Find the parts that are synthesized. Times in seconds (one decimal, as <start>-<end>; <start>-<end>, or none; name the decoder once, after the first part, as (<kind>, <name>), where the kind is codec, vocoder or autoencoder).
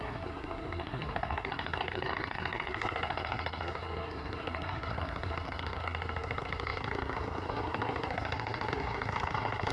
0.0-9.7 (codec, SNAC)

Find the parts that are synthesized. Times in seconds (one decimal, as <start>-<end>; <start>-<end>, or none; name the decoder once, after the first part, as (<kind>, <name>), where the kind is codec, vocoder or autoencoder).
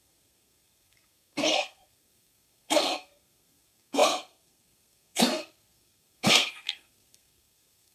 0.0-7.9 (codec, SNAC)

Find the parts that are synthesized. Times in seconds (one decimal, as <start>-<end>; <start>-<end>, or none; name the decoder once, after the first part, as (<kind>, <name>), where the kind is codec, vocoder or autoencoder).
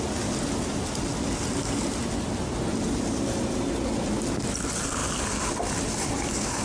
none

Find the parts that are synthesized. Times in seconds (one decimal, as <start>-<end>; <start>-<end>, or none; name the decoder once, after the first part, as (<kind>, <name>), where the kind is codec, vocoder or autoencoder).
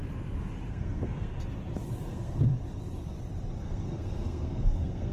0.7-1.3 (codec, SNAC); 2.1-2.5; 3.6-5.1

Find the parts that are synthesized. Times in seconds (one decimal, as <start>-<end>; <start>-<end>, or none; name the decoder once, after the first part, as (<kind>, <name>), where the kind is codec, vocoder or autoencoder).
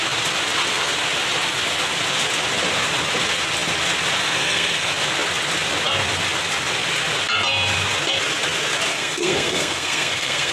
4.2-4.9 (codec, SNAC); 8.9-10.5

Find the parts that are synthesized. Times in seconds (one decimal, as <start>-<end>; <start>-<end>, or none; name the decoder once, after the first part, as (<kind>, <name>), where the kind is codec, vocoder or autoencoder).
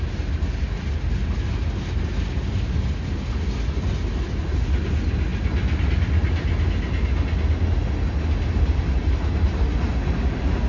none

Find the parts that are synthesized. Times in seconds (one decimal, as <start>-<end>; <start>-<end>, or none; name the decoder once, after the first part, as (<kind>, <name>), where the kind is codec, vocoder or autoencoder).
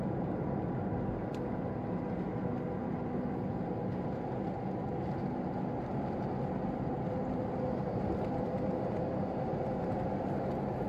none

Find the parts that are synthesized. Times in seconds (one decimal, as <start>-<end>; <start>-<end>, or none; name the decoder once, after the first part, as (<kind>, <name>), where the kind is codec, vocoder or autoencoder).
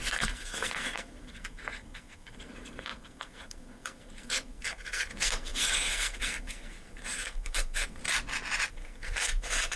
0.0-8.0 (codec, SNAC); 8.7-9.8